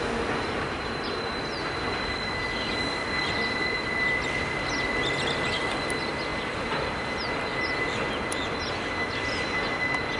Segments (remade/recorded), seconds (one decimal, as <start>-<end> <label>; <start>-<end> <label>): 0.0-6.3 recorded; 6.3-7.1 remade; 7.1-10.2 recorded